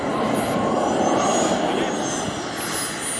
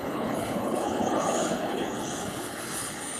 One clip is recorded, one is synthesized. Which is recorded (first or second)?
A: first